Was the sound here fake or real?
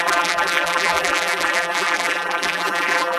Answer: fake